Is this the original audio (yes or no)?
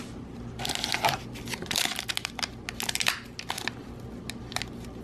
yes